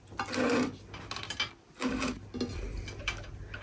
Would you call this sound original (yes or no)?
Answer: yes